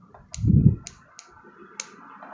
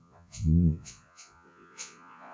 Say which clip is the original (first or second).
first